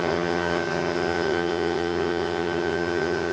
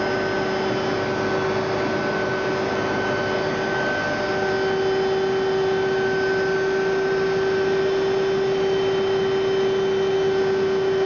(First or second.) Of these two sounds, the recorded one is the second